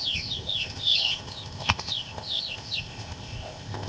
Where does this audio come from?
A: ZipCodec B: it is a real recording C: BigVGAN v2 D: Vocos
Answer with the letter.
A